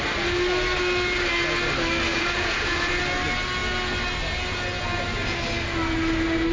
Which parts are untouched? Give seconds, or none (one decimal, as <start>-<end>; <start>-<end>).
0.0-2.1; 2.9-6.5